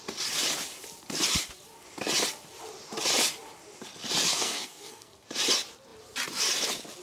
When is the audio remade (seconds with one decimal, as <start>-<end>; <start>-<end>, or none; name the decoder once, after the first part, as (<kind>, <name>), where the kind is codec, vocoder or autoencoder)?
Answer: 4.2-5.1 (codec, SNAC)